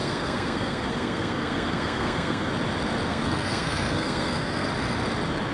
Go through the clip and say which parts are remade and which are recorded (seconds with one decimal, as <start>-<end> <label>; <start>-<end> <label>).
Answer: 0.0-2.5 remade; 2.5-3.1 recorded; 3.1-4.7 remade; 4.7-5.5 recorded

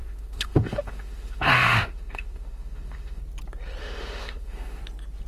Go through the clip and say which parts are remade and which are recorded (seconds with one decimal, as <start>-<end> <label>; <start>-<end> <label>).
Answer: 0.0-3.2 remade; 3.2-3.8 recorded; 3.8-4.8 remade; 4.8-5.3 recorded

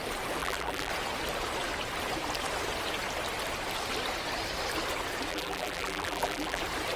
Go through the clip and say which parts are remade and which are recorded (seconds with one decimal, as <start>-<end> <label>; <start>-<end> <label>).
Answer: 0.0-0.4 recorded; 0.4-0.9 remade; 0.9-5.3 recorded; 5.3-6.6 remade; 6.6-7.0 recorded

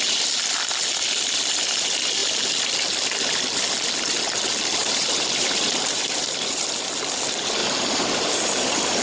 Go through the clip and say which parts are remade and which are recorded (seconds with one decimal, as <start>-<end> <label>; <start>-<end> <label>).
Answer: 0.0-4.8 recorded; 4.8-6.6 remade; 6.6-7.6 recorded; 7.6-9.0 remade

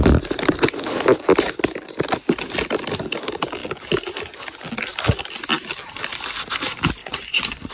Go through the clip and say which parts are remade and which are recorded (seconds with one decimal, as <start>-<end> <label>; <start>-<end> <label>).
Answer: 0.0-7.0 recorded; 7.0-7.7 remade

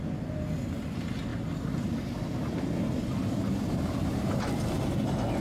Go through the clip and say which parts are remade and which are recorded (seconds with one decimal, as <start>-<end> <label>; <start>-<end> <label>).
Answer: 0.0-5.4 recorded